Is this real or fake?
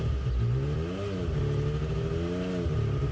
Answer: real